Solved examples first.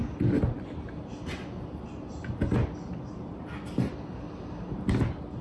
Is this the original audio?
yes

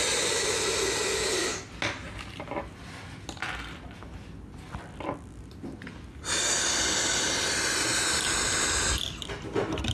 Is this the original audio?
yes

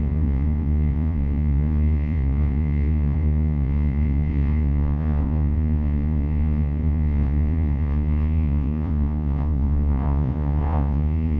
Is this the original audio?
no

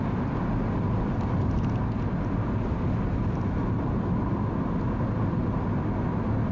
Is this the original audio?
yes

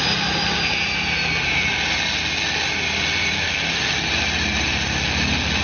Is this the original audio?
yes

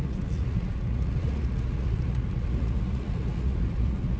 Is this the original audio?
no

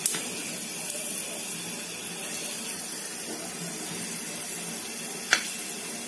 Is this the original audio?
yes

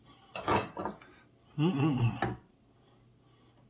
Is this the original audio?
yes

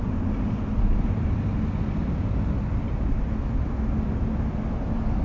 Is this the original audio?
yes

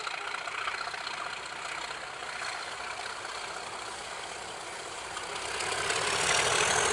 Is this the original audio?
yes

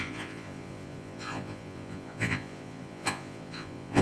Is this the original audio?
no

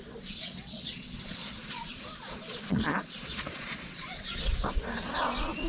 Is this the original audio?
no